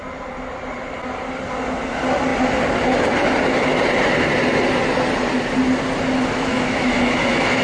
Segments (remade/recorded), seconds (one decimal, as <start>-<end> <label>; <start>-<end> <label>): 0.0-6.5 recorded; 6.5-7.6 remade